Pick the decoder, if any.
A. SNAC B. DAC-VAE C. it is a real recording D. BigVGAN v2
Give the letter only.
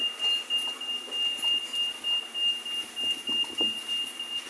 C